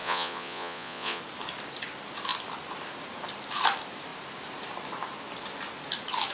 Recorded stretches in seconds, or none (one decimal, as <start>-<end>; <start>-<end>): 1.2-6.3